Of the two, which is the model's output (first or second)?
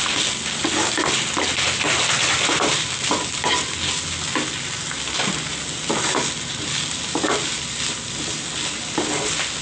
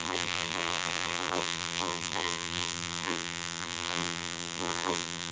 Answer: second